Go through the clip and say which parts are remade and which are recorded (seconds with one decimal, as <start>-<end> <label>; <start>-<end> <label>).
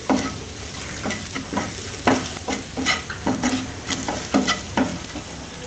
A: 0.0-1.4 remade; 1.4-4.9 recorded; 4.9-5.7 remade